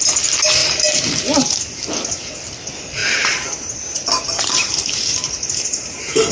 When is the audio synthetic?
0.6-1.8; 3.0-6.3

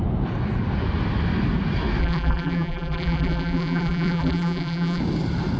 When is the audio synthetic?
2.0-5.0